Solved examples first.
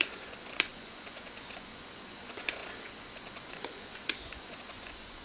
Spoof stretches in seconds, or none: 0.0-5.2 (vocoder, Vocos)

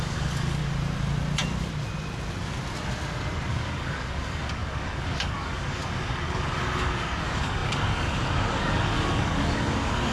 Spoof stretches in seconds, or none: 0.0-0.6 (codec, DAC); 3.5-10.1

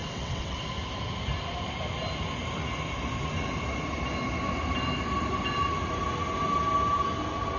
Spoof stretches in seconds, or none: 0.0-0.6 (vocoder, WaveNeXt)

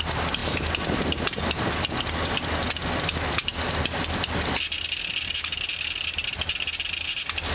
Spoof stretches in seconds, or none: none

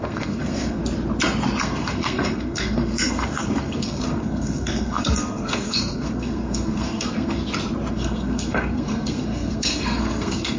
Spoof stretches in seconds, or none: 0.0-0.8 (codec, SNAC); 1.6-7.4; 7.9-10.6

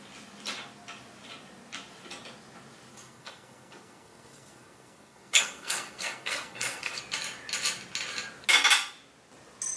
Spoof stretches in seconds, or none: 2.9-7.0 (codec, SNAC)

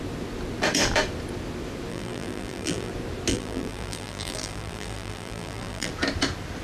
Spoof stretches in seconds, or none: 1.9-2.9 (vocoder, BigVGAN v2); 3.3-5.9

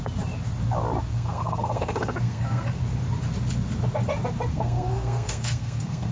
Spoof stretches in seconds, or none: 1.1-2.8 (codec, SNAC); 4.5-6.1